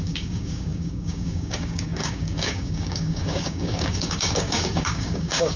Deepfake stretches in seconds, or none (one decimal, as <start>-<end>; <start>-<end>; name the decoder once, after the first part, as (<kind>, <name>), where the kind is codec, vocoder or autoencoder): 0.0-5.6 (codec, DAC)